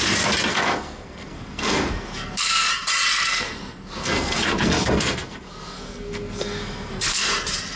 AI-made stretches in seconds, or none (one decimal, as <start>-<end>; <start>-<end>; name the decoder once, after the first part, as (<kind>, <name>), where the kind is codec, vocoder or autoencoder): 0.5-2.7 (codec, SNAC); 3.1-7.3